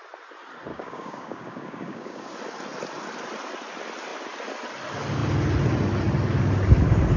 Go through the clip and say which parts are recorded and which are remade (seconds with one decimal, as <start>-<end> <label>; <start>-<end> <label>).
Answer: 0.0-0.7 recorded; 0.7-2.3 remade; 2.3-7.2 recorded